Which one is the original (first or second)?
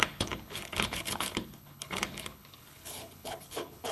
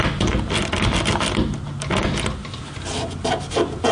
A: second